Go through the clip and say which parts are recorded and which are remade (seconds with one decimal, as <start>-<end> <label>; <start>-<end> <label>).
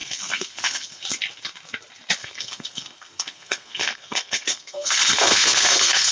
0.0-1.0 remade; 1.0-2.2 recorded; 2.2-6.1 remade